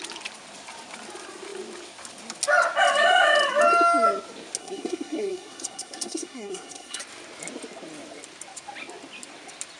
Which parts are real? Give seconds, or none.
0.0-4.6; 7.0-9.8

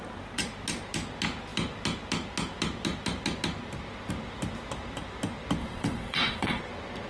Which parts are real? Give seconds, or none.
0.0-5.6; 6.6-7.1

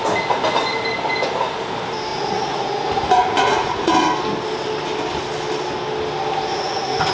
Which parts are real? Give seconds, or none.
0.0-2.1; 3.9-6.5

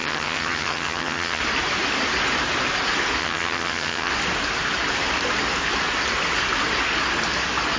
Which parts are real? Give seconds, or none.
1.4-3.2; 4.1-7.8

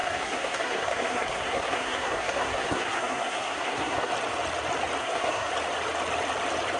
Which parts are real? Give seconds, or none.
4.1-5.0; 5.5-6.8

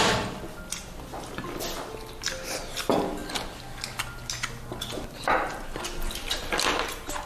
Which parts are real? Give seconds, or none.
0.0-7.3

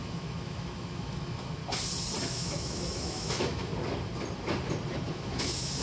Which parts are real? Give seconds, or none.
1.6-2.2; 3.7-5.1